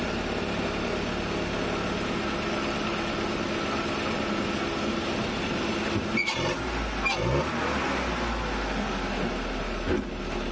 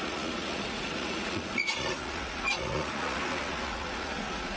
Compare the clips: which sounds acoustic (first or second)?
first